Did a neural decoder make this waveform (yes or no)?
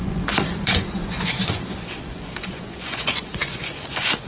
yes